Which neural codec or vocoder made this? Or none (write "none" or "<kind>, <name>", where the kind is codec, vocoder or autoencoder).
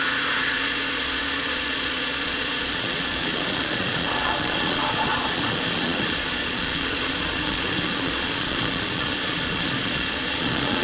vocoder, Vocos